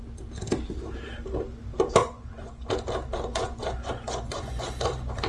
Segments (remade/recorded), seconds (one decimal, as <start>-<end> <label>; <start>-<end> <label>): 0.0-2.0 recorded; 2.0-2.7 remade; 2.7-3.3 recorded; 3.3-4.7 remade; 4.7-5.3 recorded